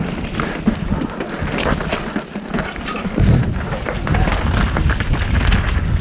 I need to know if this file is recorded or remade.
recorded